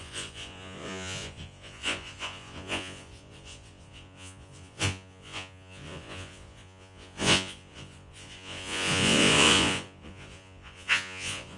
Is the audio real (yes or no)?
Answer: no